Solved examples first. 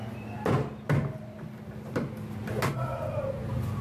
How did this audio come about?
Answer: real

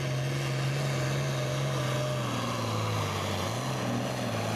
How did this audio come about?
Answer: real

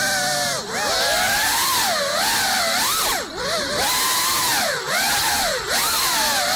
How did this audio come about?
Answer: real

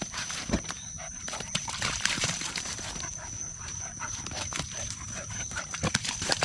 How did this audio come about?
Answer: fake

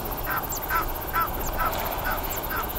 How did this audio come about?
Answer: real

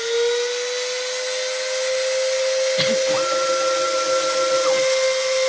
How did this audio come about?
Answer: real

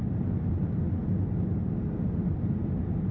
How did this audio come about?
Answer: real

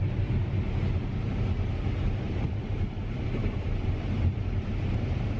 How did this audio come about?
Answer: fake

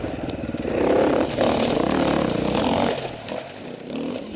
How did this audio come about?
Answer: real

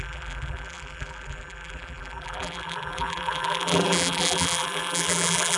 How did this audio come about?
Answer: fake